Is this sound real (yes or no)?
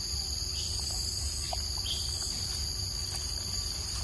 yes